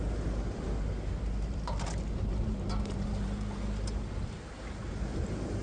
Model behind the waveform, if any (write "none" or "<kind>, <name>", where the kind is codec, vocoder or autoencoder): none